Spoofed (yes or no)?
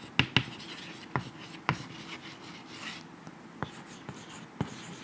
no